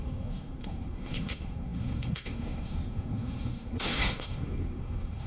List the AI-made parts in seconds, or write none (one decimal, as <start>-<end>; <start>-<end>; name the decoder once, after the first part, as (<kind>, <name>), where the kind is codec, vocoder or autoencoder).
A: 0.0-5.3 (codec, SNAC)